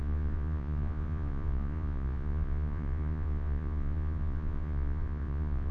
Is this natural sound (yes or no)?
no